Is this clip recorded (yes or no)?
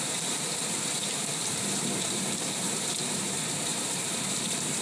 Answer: no